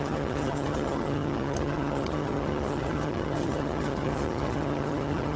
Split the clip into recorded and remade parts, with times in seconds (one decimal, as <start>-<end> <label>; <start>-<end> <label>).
0.0-5.4 remade